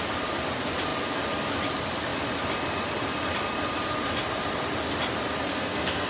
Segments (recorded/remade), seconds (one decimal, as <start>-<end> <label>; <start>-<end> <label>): 0.0-5.5 recorded; 5.5-6.1 remade

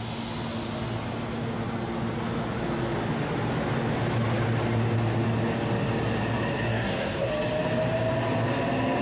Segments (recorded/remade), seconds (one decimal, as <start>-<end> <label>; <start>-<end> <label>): 0.0-6.7 recorded; 6.7-7.3 remade; 7.3-9.0 recorded